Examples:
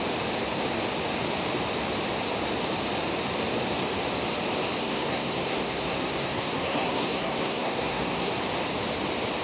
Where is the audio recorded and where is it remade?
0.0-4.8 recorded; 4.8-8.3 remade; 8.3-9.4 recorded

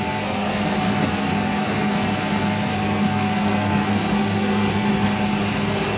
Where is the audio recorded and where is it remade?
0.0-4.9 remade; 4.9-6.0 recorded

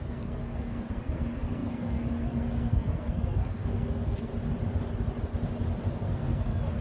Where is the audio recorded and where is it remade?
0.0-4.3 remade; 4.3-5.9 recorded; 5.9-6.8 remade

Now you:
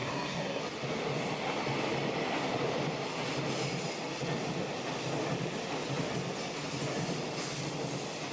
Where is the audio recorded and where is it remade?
0.0-0.6 remade; 0.6-8.3 recorded